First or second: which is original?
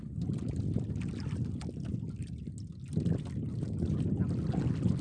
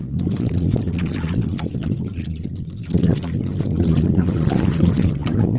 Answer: first